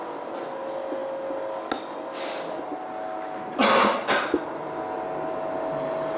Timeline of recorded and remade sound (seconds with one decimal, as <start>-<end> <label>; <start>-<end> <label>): 0.0-6.2 recorded